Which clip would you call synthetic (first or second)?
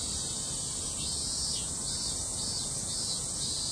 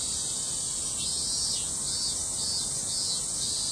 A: first